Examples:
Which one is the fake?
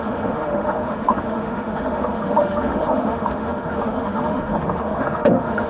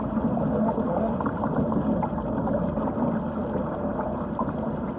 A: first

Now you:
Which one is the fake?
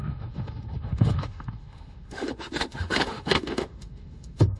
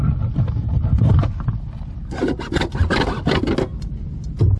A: first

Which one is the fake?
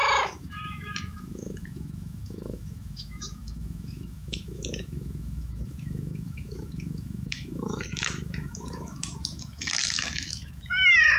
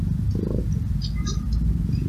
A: first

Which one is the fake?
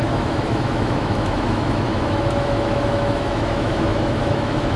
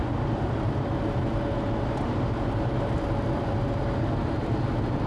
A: first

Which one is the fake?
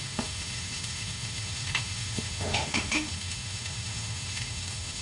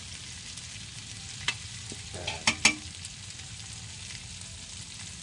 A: first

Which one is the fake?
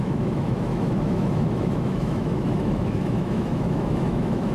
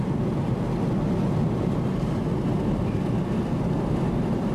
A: first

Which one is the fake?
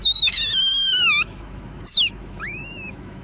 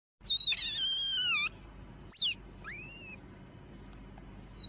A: first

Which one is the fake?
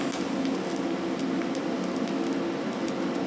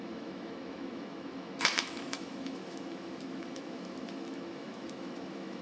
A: second